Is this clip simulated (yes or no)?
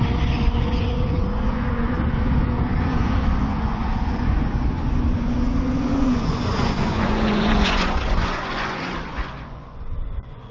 yes